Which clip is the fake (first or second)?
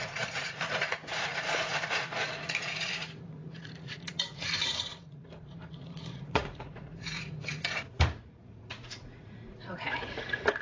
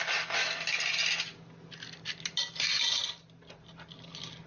first